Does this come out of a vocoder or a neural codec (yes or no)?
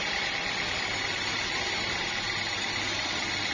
yes